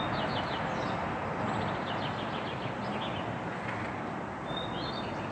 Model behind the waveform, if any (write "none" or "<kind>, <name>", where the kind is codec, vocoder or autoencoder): none